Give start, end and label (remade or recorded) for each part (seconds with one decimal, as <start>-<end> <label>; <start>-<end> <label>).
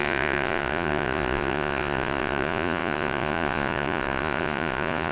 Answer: 0.0-5.1 remade